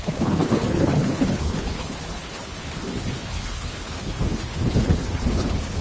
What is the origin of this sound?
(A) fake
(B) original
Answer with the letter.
A